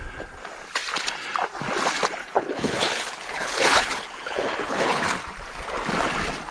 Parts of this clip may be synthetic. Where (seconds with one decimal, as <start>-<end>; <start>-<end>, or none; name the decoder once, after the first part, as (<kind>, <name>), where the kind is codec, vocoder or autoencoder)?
2.2-5.0 (codec, HILCodec)